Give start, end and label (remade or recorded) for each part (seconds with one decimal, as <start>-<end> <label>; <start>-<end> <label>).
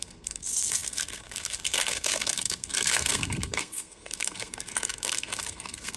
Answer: 0.0-6.0 remade